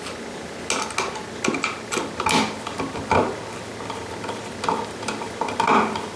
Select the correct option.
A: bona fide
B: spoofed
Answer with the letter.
A